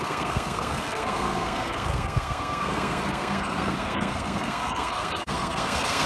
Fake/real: fake